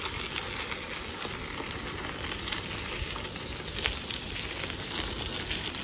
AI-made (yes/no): no